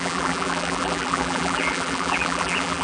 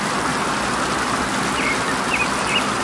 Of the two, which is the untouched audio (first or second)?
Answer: second